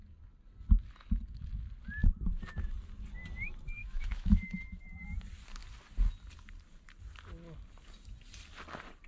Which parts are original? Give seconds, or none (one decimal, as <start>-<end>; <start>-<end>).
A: 0.0-3.8; 4.8-9.1